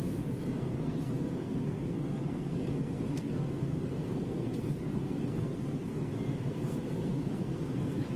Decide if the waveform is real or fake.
fake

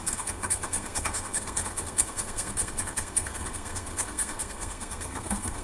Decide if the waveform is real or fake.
fake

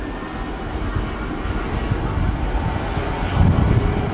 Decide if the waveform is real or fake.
real